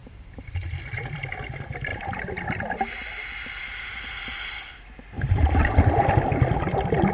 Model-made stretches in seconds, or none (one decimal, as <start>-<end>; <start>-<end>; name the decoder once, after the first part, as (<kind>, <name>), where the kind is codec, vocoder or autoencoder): 0.0-1.3 (vocoder, BigVGAN v2)